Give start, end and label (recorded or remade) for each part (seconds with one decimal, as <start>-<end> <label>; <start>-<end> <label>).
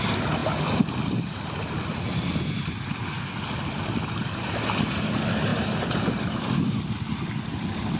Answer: 0.0-5.5 recorded; 5.5-6.6 remade; 6.6-8.0 recorded